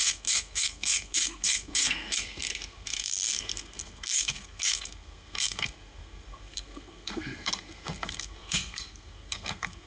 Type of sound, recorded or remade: remade